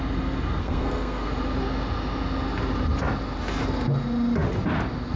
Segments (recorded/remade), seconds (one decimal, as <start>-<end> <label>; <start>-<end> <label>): 0.0-0.6 recorded; 0.6-1.3 remade; 1.3-5.2 recorded